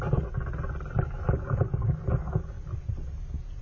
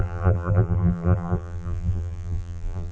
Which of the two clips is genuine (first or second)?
first